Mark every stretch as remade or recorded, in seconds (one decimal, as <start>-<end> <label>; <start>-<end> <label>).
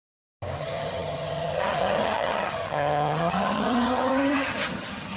0.0-0.6 recorded; 0.6-5.2 remade